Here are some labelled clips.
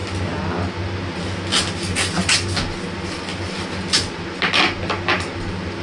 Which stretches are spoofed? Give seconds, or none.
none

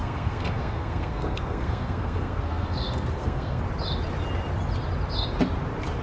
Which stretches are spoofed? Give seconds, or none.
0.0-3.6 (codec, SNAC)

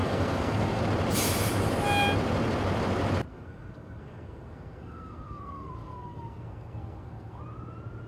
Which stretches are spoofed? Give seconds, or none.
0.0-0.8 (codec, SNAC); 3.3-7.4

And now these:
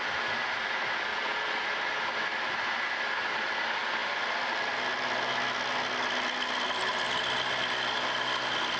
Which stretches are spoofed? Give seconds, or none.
1.1-1.6 (vocoder, Vocos)

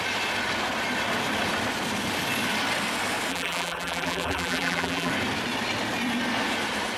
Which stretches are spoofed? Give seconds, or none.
3.3-5.1 (vocoder, BigVGAN v2)